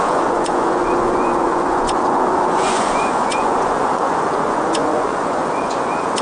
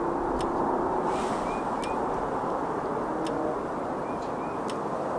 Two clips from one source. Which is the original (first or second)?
second